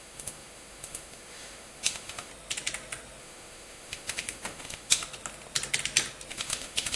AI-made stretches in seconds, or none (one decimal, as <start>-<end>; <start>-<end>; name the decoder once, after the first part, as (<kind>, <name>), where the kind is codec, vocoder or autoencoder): 0.0-2.3 (autoencoder, DAC-VAE); 3.2-5.0; 6.3-7.0